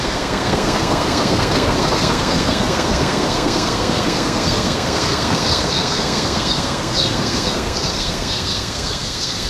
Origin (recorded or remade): remade